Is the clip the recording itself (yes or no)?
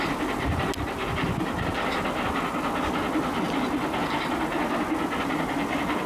yes